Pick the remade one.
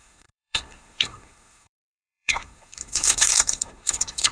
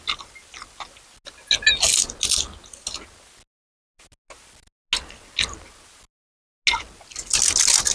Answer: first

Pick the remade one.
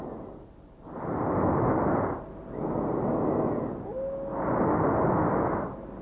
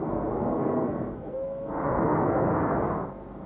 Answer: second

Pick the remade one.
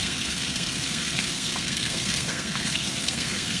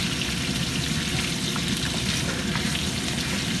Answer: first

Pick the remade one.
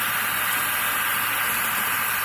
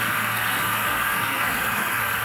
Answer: second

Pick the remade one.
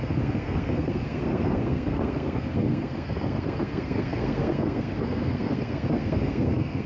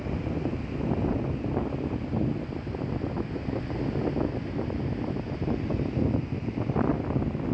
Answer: first